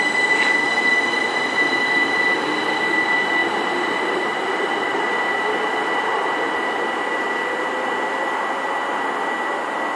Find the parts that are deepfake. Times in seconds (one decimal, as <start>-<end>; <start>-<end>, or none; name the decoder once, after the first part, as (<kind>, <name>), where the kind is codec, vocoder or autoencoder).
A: none